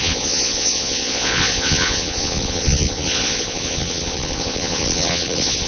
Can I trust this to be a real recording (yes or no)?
no